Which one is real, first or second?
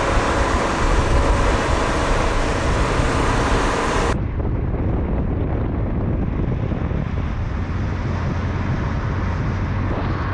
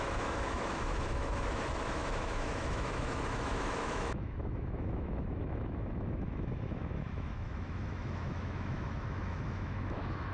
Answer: first